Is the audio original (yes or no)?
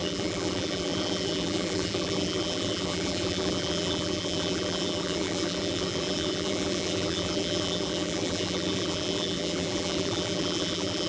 no